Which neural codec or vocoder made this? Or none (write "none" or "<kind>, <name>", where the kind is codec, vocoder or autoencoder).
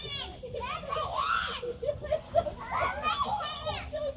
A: none